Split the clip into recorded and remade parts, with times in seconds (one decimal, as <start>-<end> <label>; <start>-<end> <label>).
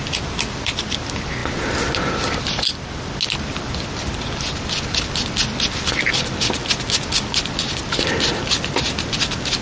0.0-9.6 recorded